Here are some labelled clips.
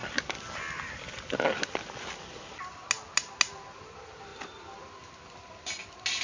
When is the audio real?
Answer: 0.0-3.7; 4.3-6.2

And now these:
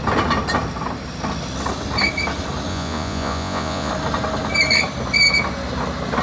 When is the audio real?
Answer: 0.0-2.7; 3.9-6.2